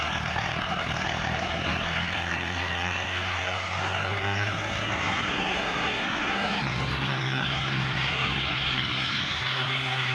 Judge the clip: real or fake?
fake